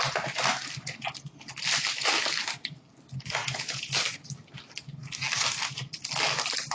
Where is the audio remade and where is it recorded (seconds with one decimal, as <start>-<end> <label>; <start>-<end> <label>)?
0.0-3.4 recorded; 3.4-3.9 remade; 3.9-6.7 recorded